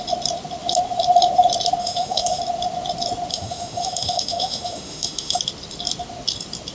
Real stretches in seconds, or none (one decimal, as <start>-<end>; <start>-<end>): 0.0-1.8; 2.4-3.3; 5.4-6.7